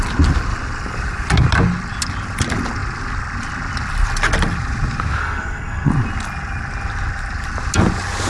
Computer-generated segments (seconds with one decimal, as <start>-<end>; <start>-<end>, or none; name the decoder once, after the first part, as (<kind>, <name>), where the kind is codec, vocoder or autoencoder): 5.2-5.9 (codec, SNAC)